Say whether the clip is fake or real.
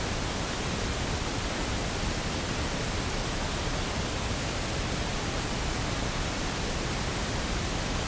real